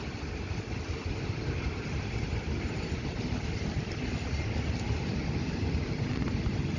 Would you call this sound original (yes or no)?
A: no